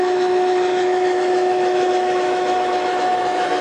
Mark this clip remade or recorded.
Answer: remade